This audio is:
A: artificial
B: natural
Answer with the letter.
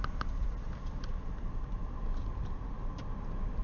B